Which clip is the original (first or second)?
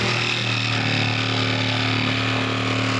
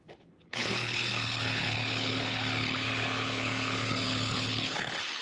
first